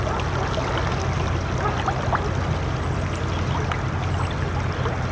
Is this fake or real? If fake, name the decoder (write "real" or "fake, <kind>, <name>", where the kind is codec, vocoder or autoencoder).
real